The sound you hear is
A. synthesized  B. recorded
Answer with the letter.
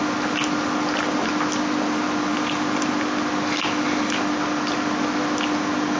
B